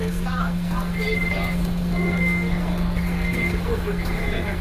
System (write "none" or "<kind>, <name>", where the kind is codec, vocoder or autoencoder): codec, SNAC